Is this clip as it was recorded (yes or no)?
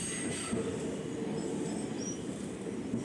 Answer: yes